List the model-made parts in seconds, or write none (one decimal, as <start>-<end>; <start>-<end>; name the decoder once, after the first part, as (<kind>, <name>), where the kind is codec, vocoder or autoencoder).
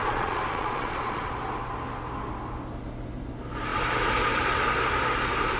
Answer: 0.0-1.3 (vocoder, Vocos)